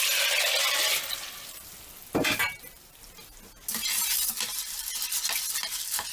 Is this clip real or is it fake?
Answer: real